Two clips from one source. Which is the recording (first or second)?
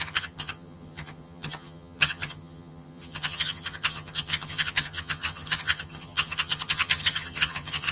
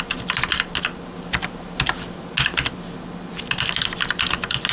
second